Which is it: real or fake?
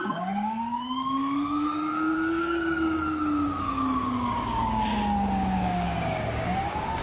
fake